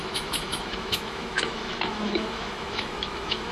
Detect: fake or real fake